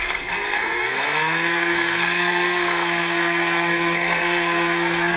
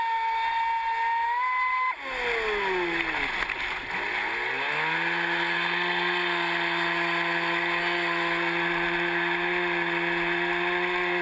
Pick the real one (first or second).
second